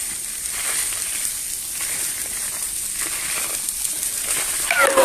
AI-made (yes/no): no